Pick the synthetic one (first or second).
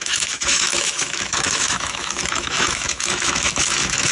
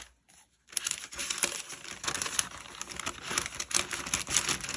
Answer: first